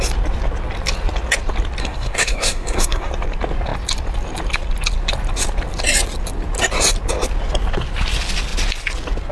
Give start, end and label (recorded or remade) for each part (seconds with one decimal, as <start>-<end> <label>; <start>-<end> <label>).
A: 0.0-1.8 recorded; 1.8-3.1 remade; 3.1-9.3 recorded